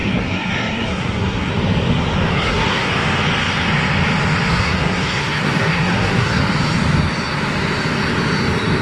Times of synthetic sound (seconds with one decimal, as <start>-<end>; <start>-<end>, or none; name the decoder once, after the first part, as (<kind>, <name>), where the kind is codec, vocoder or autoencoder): 0.0-1.5 (codec, SNAC); 2.3-2.9; 4.5-6.4